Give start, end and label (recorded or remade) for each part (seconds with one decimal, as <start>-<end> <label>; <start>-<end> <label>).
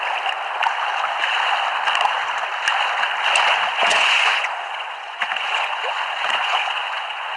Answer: 0.0-3.7 recorded; 3.7-7.4 remade